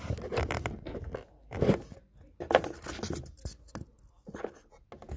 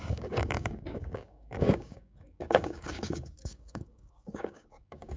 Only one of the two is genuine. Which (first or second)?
first